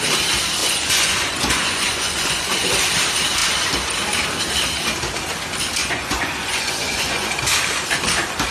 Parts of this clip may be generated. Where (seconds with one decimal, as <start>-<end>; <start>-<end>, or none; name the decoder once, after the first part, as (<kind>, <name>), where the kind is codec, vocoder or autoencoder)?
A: 0.6-2.7 (vocoder, Vocos); 5.8-7.3